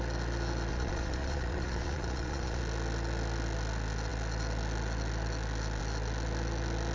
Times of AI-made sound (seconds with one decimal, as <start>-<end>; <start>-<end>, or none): 0.7-2.6